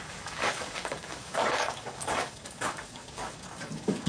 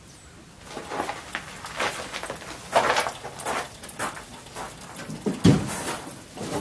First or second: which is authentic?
second